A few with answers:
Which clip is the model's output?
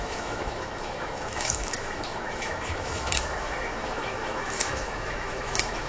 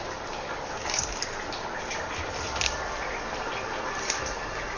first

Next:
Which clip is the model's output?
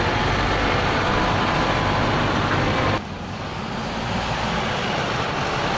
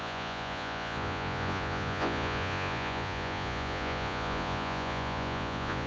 second